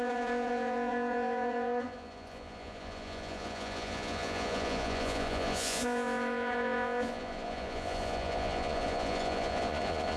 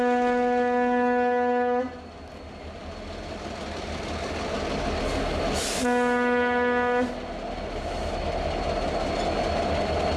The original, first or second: second